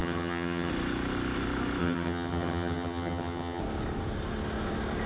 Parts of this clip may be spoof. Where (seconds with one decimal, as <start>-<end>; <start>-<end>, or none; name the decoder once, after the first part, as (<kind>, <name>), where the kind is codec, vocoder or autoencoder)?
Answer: 0.0-0.7 (vocoder, HiFi-GAN); 1.8-3.6